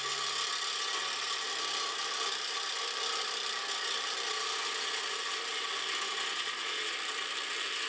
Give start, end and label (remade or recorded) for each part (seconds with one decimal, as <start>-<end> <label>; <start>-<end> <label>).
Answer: 0.0-6.3 recorded; 6.3-6.9 remade; 6.9-7.9 recorded

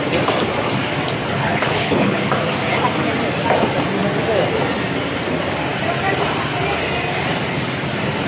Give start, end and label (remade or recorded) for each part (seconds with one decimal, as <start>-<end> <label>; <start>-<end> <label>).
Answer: 0.0-1.2 recorded; 1.2-2.2 remade; 2.2-8.3 recorded

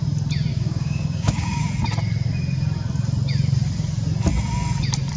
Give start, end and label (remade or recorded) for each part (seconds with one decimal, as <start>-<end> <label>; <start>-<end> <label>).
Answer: 0.0-0.5 recorded; 0.5-1.6 remade; 1.6-5.2 recorded

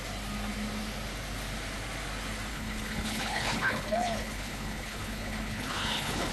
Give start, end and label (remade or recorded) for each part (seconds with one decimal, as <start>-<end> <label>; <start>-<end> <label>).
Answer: 0.0-2.5 recorded; 2.5-6.3 remade

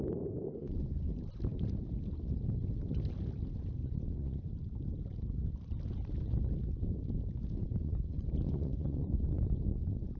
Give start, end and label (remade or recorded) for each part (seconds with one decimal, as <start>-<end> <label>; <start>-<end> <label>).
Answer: 0.0-0.6 recorded; 0.6-1.1 remade; 1.1-3.8 recorded; 3.8-4.4 remade; 4.4-7.6 recorded; 7.6-10.2 remade

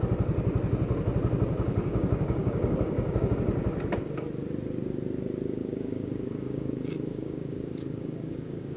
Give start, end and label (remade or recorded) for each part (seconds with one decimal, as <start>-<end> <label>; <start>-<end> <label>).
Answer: 0.0-1.7 recorded; 1.7-3.3 remade; 3.3-5.6 recorded; 5.6-8.8 remade